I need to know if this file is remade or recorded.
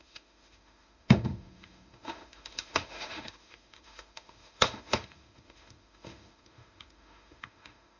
remade